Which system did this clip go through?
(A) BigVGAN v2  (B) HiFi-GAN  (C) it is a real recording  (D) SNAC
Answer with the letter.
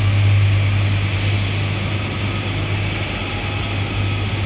C